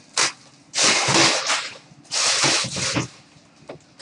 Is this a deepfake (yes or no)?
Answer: no